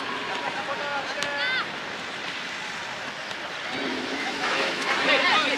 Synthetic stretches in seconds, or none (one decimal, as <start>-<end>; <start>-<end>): 3.9-4.9